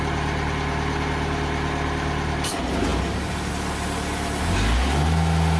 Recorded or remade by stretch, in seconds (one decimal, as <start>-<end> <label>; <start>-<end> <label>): 0.0-5.6 recorded